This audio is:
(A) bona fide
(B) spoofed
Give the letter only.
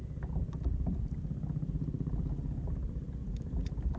B